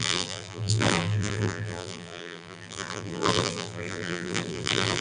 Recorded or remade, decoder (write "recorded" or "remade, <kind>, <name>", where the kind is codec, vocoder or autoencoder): remade, vocoder, BigVGAN v2